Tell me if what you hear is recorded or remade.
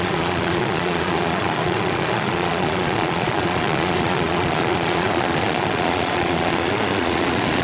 remade